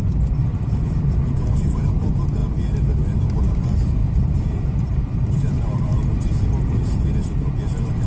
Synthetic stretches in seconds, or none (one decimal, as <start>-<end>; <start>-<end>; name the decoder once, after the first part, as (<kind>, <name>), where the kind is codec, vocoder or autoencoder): 0.5-1.2 (vocoder, BigVGAN v2); 4.0-5.0